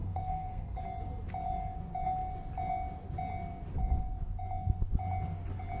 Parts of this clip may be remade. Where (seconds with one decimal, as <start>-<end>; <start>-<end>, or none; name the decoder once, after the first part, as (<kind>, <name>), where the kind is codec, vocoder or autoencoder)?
0.0-0.8 (codec, SNAC)